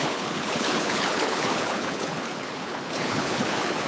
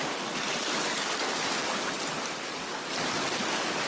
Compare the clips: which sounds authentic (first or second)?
second